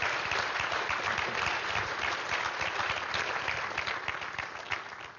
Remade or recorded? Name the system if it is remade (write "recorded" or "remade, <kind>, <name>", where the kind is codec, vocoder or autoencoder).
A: recorded